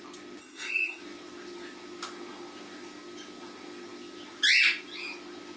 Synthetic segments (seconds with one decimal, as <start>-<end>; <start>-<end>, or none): 0.4-1.0